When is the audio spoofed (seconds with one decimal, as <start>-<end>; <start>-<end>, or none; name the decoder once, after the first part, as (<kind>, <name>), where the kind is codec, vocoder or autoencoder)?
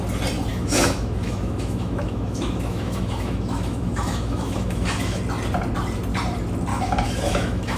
0.5-5.2 (autoencoder, DAC-VAE); 6.7-7.8